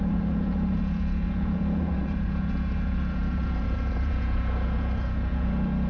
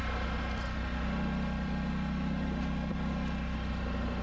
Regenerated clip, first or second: first